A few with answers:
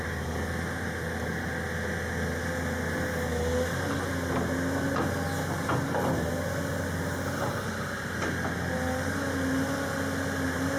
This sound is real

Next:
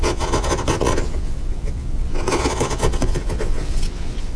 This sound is fake